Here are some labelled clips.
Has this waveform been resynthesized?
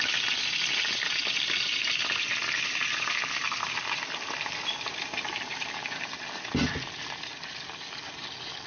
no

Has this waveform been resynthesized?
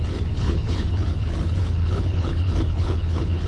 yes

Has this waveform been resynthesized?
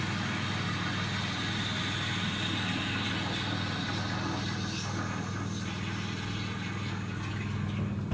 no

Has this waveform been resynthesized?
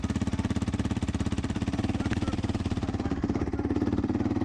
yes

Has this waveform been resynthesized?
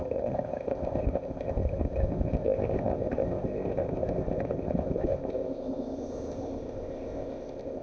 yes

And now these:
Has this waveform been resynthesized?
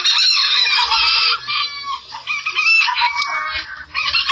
no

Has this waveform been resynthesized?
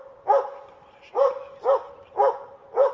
no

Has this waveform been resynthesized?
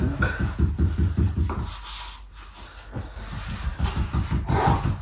no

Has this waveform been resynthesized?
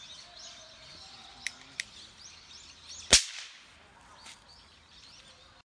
no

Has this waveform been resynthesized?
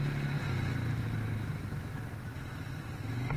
no